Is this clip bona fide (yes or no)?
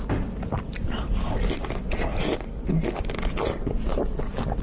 yes